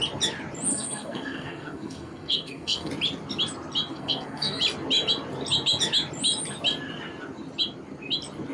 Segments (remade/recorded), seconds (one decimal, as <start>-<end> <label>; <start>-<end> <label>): 0.0-0.7 recorded; 0.7-2.9 remade; 2.9-3.9 recorded; 3.9-4.6 remade; 4.6-8.5 recorded